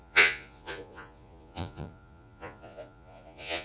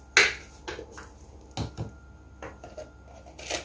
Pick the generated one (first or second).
first